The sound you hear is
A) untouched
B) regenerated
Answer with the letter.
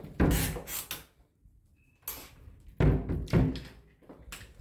A